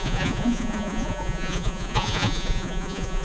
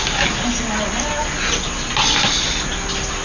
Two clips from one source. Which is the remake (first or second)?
first